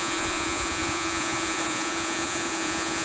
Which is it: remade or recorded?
remade